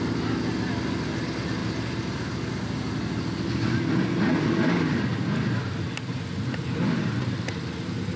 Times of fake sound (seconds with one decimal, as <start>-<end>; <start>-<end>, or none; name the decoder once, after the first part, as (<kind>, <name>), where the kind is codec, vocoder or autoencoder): none